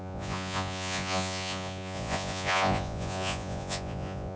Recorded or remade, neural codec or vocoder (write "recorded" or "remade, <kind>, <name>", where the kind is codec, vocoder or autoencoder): remade, vocoder, Vocos